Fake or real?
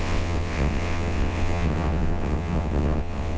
fake